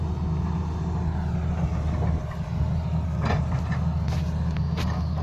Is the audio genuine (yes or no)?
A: yes